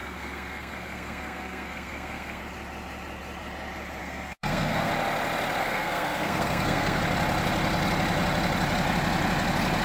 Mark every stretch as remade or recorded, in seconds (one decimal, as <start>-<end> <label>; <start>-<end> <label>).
0.0-2.4 remade; 2.4-4.0 recorded; 4.0-4.9 remade; 4.9-5.6 recorded; 5.6-7.0 remade; 7.0-9.8 recorded